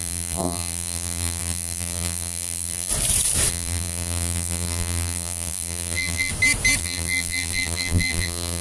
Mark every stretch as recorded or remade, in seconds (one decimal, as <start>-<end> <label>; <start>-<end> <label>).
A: 0.0-2.9 remade; 2.9-3.5 recorded; 3.5-6.3 remade; 6.3-6.8 recorded; 6.8-8.6 remade

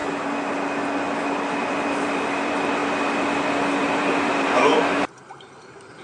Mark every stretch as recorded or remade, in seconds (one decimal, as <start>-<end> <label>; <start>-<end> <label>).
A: 0.0-1.7 recorded; 1.7-2.8 remade; 2.8-3.8 recorded; 3.8-4.7 remade; 4.7-5.6 recorded; 5.6-6.0 remade

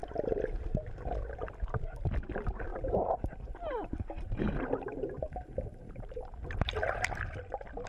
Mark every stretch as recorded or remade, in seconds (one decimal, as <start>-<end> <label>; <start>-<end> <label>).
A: 0.0-0.6 remade; 0.6-2.7 recorded; 2.7-6.8 remade; 6.8-7.9 recorded

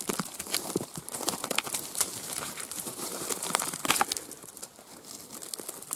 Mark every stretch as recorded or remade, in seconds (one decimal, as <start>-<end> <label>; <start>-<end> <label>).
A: 0.0-0.5 recorded; 0.5-3.9 remade; 3.9-6.0 recorded

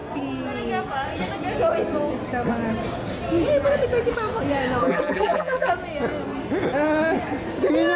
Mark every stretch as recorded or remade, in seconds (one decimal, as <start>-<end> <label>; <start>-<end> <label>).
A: 0.0-4.8 recorded; 4.8-5.7 remade; 5.7-8.0 recorded

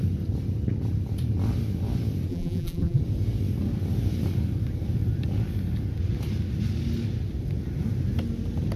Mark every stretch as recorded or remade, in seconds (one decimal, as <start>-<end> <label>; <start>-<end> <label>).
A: 0.0-2.3 recorded; 2.3-3.0 remade; 3.0-8.8 recorded